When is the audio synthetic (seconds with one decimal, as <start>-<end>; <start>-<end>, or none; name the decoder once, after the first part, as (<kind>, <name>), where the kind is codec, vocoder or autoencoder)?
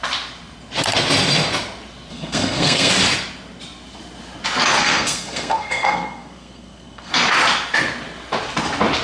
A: 2.1-2.9 (codec, SNAC); 4.8-7.1